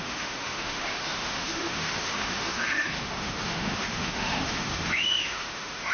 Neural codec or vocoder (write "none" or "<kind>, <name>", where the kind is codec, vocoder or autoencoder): autoencoder, DAC-VAE